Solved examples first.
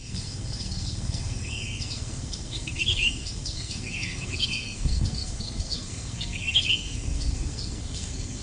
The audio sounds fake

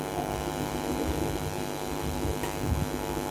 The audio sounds real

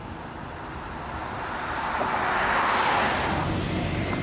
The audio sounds real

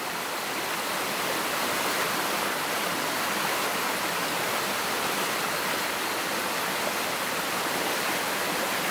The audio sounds real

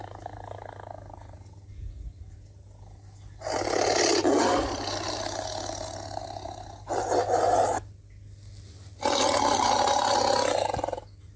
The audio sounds real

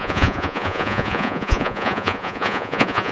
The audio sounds fake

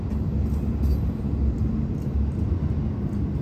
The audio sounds real